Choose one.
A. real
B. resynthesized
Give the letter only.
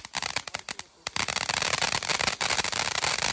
A